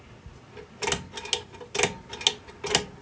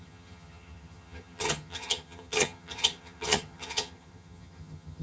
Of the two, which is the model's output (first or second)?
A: second